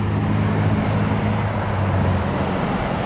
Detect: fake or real real